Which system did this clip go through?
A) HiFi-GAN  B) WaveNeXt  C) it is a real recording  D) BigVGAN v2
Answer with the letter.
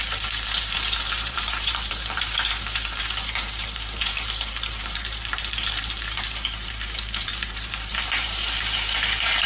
D